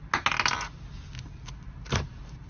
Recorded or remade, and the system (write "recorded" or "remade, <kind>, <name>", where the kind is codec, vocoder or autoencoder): recorded